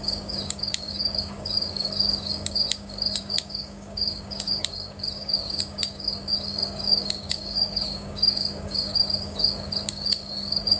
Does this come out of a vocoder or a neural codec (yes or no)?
yes